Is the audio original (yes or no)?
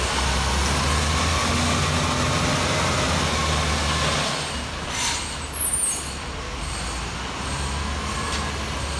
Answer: yes